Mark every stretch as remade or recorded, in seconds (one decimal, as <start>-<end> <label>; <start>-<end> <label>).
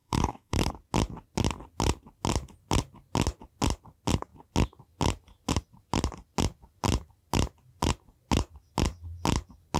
0.0-0.7 remade; 0.7-9.8 recorded